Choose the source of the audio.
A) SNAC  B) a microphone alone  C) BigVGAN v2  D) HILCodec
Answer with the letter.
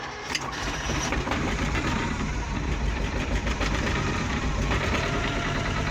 C